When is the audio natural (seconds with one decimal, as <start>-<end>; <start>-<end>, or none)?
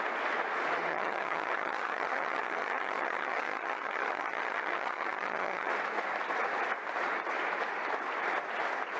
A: 0.0-0.9; 5.7-9.0